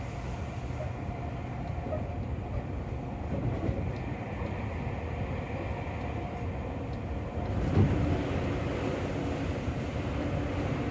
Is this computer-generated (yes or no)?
no